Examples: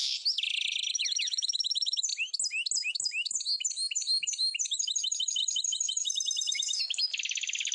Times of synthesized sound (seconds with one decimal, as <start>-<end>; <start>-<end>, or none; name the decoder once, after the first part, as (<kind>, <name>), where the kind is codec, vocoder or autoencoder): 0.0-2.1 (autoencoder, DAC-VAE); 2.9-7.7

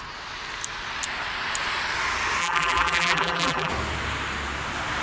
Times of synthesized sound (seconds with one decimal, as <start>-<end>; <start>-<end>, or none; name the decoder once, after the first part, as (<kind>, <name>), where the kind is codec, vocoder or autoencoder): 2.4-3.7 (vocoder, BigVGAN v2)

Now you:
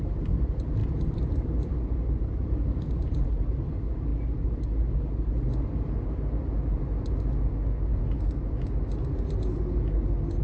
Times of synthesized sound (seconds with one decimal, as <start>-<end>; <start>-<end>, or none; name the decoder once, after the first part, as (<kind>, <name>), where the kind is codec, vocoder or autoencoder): 0.8-2.9 (vocoder, BigVGAN v2)